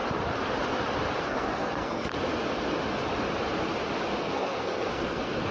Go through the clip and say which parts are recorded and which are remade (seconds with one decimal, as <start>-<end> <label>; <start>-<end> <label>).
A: 0.0-1.2 recorded; 1.2-2.1 remade; 2.1-4.2 recorded; 4.2-5.5 remade